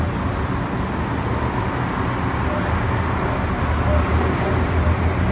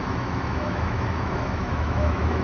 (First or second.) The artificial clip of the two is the second